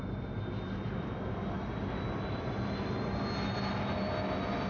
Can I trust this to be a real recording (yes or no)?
yes